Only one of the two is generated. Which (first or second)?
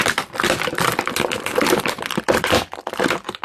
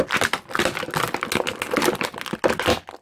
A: first